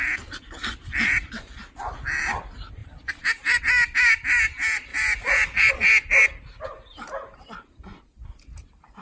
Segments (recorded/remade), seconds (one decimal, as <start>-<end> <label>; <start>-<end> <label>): 0.0-2.8 recorded; 2.8-3.6 remade; 3.6-4.9 recorded; 4.9-5.7 remade; 5.7-9.0 recorded